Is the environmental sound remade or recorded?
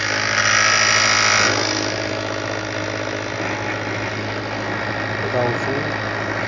recorded